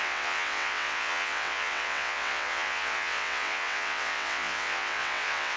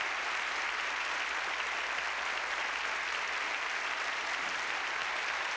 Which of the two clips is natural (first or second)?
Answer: second